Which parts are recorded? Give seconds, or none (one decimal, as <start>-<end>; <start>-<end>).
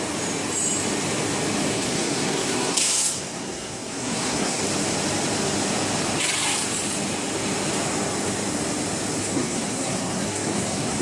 0.0-1.7; 4.6-9.2